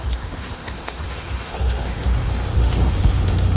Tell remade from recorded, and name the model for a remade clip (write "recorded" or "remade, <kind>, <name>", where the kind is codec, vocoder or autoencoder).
remade, autoencoder, DAC-VAE